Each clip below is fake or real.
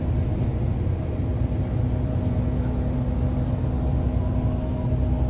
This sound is real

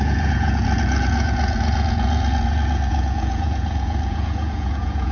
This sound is fake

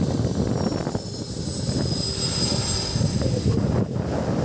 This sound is real